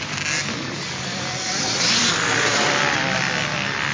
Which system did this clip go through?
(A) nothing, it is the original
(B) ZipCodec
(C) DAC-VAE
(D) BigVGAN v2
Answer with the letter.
D